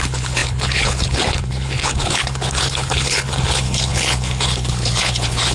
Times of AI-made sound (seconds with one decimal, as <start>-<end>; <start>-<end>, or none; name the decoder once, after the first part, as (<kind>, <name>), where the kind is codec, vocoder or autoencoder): 0.0-5.5 (codec, HILCodec)

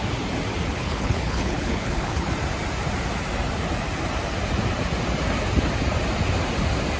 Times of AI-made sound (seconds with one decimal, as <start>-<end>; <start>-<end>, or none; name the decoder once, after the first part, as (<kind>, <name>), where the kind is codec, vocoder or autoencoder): 0.7-2.3 (codec, HILCodec)

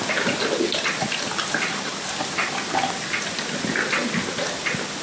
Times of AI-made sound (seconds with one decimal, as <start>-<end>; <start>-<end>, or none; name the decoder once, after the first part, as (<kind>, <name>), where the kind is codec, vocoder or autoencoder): none

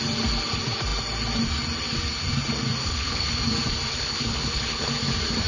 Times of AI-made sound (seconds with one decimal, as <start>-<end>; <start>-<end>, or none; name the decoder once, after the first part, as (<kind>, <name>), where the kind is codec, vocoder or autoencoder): 2.8-3.4 (codec, HILCodec); 3.9-4.9